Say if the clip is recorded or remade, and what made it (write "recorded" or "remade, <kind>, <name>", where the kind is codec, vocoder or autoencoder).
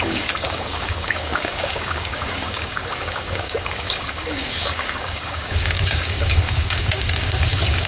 remade, codec, DAC